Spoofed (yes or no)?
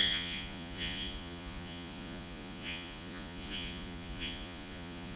yes